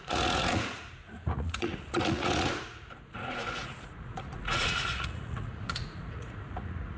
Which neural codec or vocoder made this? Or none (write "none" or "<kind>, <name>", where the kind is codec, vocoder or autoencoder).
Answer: vocoder, Vocos